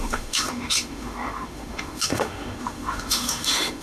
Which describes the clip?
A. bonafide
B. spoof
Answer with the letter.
B